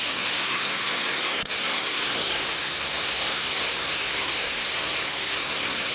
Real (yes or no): no